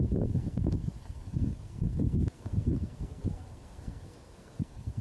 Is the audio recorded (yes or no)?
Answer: no